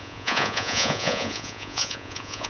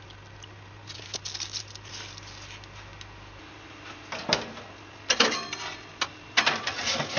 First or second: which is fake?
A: first